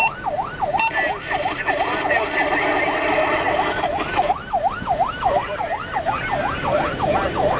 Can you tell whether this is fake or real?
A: real